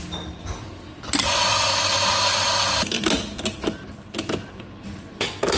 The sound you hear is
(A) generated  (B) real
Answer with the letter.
B